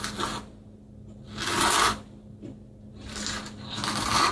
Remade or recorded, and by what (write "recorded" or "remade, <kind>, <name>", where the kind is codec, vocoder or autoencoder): recorded